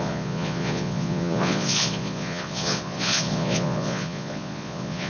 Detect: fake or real fake